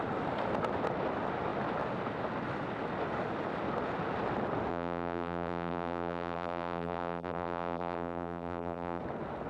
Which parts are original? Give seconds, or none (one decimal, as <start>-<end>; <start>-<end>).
0.0-4.7; 9.0-9.5